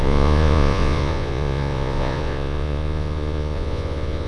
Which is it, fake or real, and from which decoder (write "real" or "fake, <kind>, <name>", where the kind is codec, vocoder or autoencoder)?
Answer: fake, vocoder, Vocos